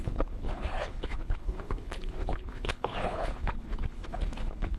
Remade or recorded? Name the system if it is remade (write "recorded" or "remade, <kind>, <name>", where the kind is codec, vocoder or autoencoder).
remade, codec, HILCodec